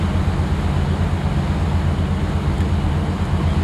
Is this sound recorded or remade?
recorded